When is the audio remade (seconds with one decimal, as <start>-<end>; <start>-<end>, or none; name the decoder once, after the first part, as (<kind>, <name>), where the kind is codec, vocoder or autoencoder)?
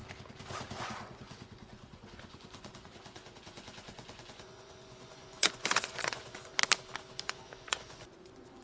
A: 0.8-6.5 (vocoder, Vocos); 7.2-8.6